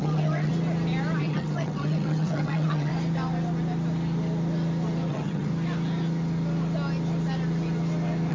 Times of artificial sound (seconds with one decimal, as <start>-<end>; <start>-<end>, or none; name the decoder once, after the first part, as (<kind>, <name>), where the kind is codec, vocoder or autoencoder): 0.0-0.5 (vocoder, HiFi-GAN); 1.2-2.9; 5.1-5.5